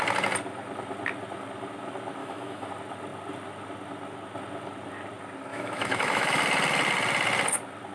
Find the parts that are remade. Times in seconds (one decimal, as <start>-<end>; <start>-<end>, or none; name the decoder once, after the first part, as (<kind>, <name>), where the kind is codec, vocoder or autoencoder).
2.2-2.7 (autoencoder, DAC-VAE); 5.5-6.4